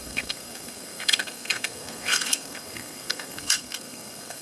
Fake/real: fake